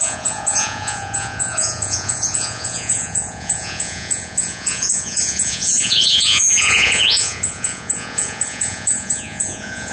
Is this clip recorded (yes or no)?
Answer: no